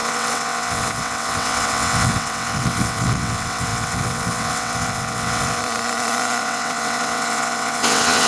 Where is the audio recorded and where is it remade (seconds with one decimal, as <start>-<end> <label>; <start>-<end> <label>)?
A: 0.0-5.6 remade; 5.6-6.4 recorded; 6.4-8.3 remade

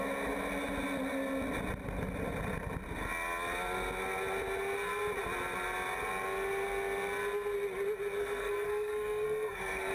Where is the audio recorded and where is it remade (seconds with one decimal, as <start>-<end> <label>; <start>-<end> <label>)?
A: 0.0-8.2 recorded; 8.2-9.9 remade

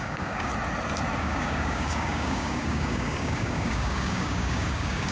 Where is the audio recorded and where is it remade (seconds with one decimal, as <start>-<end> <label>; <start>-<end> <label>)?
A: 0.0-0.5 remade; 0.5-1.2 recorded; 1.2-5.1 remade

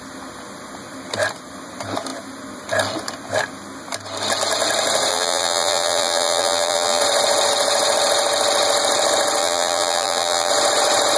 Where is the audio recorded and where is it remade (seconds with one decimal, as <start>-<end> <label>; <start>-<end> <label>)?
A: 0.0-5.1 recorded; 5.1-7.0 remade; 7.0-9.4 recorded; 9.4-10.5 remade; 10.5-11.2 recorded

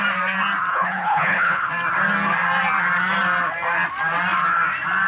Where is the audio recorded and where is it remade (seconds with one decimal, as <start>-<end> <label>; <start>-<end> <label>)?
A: 0.0-0.7 recorded; 0.7-1.7 remade; 1.7-5.1 recorded

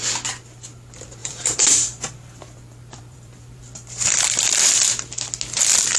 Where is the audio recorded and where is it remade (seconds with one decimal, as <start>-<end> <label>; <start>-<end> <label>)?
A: 0.0-1.2 recorded; 1.2-4.8 remade; 4.8-6.0 recorded